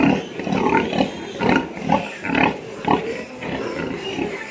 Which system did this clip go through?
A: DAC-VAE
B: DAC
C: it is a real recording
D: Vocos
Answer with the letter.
C